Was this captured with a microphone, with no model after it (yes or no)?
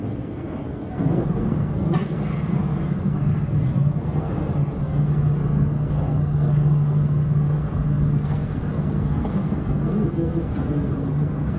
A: no